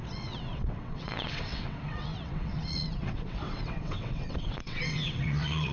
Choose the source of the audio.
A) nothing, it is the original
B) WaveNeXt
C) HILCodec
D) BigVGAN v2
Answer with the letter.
B